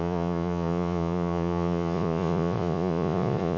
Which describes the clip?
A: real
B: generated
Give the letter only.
B